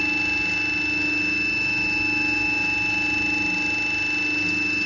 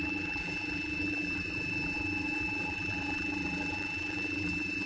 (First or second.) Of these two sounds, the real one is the first